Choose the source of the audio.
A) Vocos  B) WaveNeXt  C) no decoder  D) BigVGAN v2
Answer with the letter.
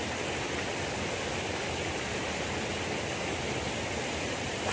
C